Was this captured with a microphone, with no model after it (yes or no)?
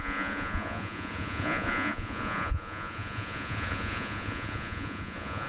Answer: no